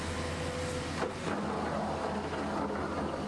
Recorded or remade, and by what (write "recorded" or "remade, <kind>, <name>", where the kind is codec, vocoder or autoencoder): recorded